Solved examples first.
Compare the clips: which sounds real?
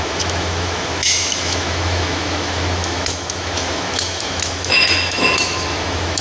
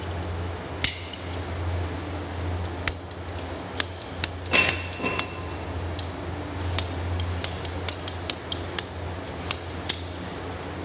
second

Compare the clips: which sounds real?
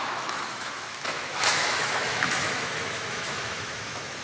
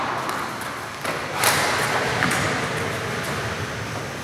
second